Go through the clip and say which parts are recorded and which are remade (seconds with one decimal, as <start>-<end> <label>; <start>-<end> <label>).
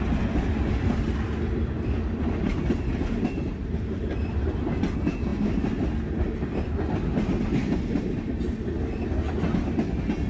0.0-10.3 recorded